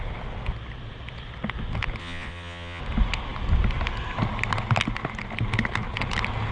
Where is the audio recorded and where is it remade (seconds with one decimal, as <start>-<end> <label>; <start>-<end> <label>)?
0.0-2.0 recorded; 2.0-2.8 remade; 2.8-6.5 recorded